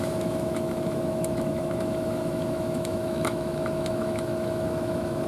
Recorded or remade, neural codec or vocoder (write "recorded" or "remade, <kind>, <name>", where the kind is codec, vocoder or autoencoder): remade, autoencoder, DAC-VAE